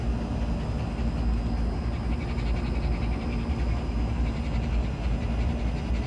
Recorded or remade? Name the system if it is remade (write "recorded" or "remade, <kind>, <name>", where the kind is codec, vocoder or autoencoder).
recorded